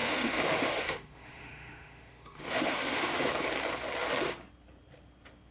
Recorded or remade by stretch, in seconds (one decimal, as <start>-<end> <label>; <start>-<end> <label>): 0.0-3.3 remade; 3.3-5.5 recorded